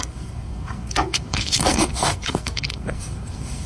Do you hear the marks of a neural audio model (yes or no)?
yes